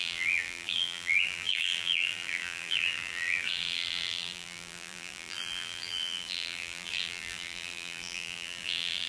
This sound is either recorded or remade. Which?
remade